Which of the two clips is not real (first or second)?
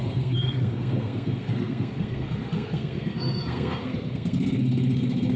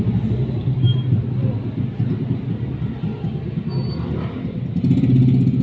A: first